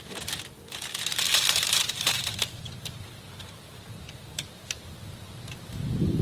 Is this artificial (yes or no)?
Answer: yes